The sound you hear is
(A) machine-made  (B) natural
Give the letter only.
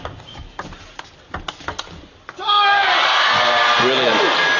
B